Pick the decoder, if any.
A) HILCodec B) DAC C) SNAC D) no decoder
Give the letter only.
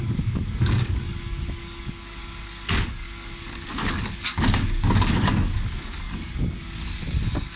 B